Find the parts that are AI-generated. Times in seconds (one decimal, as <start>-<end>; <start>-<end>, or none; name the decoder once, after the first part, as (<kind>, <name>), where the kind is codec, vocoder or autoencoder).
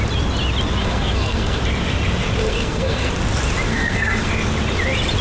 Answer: 0.8-1.6 (codec, SNAC); 2.4-3.1; 3.7-4.3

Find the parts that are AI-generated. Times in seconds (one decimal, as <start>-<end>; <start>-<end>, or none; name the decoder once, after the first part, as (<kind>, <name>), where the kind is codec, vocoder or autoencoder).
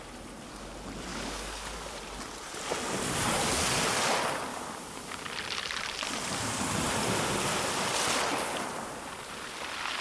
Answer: 1.1-2.0 (codec, DAC); 4.5-5.3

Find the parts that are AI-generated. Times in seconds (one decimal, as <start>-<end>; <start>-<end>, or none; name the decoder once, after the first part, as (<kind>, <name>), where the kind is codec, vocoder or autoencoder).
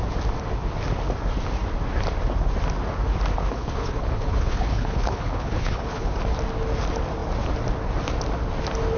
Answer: 3.4-6.2 (codec, HILCodec)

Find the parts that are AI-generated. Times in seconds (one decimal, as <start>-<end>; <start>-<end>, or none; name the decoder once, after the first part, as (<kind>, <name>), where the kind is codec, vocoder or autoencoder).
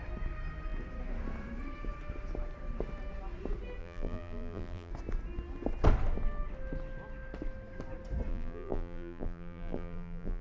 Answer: 3.8-4.9 (vocoder, BigVGAN v2); 8.3-10.4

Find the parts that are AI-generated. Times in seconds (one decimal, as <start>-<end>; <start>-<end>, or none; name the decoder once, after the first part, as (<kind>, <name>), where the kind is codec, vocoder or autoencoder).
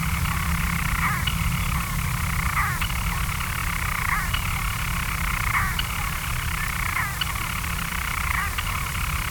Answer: 7.9-8.5 (vocoder, BigVGAN v2)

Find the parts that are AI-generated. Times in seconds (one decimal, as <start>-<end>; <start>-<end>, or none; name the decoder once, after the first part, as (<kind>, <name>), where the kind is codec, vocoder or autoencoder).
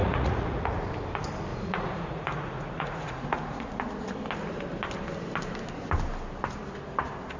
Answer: 0.0-0.9 (vocoder, Vocos); 1.5-3.8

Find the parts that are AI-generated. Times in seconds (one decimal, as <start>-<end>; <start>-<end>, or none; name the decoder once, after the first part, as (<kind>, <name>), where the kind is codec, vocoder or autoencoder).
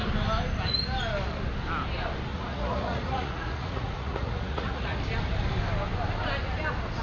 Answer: 2.3-5.0 (vocoder, Vocos)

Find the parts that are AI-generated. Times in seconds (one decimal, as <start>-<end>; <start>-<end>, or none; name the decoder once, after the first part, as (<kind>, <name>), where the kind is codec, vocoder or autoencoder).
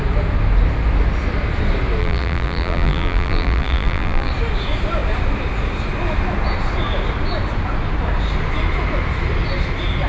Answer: 2.0-4.3 (vocoder, BigVGAN v2)